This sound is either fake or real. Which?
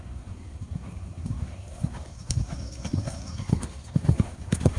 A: fake